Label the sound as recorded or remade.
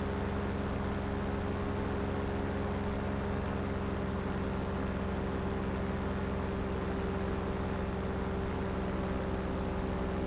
recorded